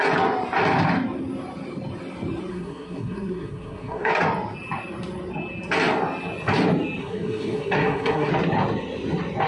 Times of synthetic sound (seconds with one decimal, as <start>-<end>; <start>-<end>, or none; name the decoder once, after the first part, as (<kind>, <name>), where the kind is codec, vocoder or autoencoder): 2.5-4.1 (codec, SNAC); 7.0-8.3